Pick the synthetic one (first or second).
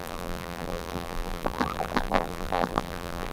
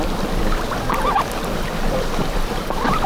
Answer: first